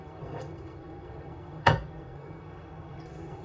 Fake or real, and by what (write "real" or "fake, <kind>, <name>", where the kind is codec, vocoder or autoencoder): fake, codec, SNAC